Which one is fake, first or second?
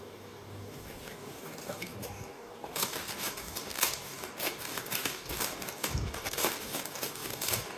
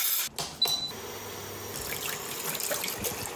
first